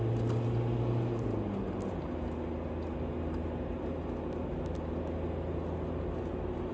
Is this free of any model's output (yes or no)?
yes